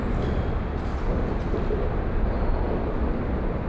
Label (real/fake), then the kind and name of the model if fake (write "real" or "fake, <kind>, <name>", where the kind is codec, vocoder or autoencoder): real